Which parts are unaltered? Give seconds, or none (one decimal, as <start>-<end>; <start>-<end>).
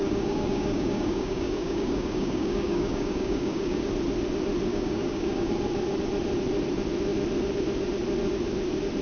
3.9-4.7; 5.5-9.0